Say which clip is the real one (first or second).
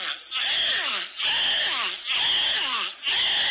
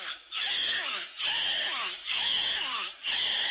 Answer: first